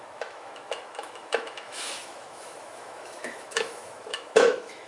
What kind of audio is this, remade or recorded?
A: remade